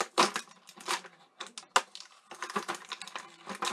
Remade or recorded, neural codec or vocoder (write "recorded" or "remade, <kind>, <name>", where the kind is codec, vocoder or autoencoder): recorded